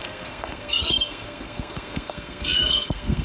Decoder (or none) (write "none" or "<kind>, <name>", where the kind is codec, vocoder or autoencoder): codec, SNAC